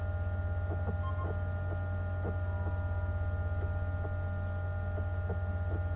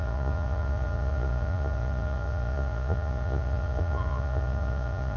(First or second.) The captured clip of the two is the first